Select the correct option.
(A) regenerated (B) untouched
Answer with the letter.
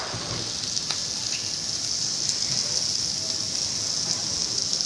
B